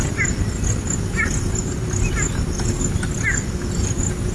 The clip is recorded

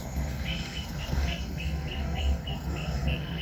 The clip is remade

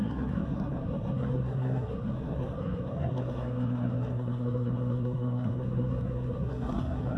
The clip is remade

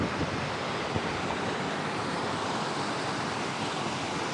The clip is remade